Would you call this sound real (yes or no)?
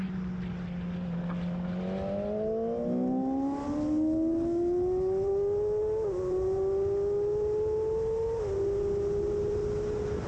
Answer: yes